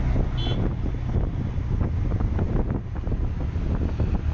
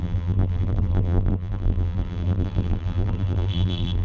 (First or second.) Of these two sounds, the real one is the first